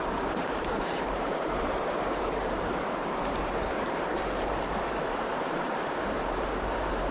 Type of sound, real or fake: fake